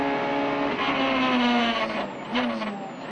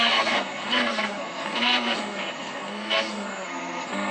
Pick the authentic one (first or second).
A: first